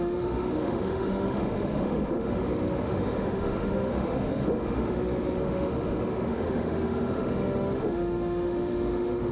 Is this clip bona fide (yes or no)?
no